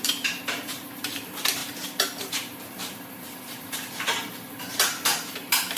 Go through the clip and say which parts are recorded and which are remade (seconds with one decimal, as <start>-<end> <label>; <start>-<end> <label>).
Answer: 0.0-1.6 remade; 1.6-2.3 recorded; 2.3-5.8 remade